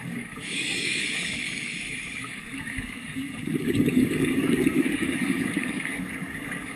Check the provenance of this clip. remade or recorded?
remade